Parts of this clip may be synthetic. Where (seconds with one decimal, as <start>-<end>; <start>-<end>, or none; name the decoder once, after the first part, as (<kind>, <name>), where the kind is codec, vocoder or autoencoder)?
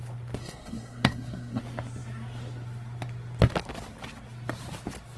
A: 0.4-1.6 (codec, SNAC)